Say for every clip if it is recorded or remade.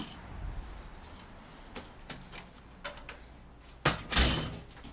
recorded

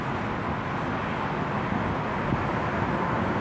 recorded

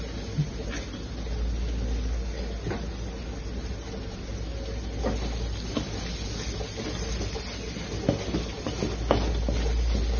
recorded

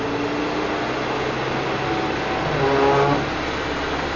recorded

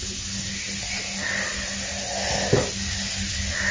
recorded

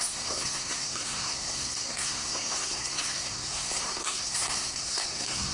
remade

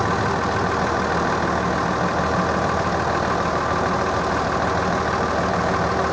recorded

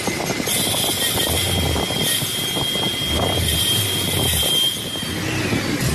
recorded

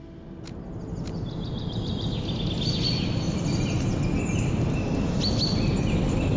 recorded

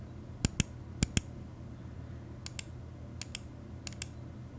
recorded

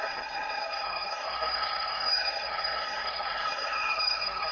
remade